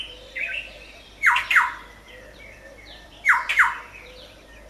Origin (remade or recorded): remade